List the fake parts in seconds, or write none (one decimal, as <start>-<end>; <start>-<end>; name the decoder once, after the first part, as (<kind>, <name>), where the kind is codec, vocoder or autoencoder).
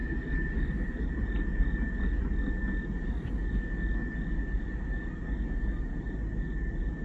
none